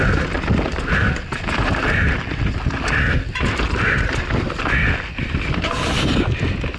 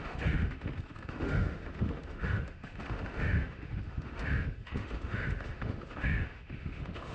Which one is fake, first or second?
second